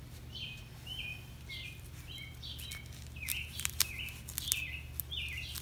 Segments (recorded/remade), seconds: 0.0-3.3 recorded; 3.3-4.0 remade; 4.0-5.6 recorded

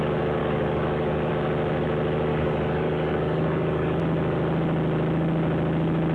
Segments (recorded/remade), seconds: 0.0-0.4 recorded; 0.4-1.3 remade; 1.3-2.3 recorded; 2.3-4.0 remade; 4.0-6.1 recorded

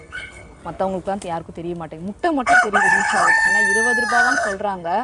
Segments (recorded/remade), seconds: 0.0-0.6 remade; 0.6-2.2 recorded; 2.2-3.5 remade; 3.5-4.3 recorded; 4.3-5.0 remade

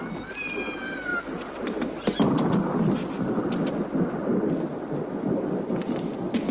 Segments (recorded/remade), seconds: 0.0-6.5 recorded